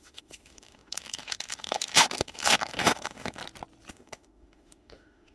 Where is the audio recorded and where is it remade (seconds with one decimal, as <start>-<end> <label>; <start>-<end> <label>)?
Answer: 0.0-3.4 remade; 3.4-3.9 recorded; 3.9-5.3 remade